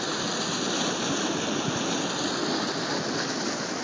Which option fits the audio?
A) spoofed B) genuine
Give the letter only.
B